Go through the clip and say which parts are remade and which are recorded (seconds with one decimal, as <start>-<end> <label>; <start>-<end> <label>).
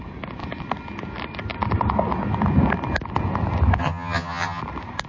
0.0-3.8 recorded; 3.8-4.6 remade; 4.6-5.1 recorded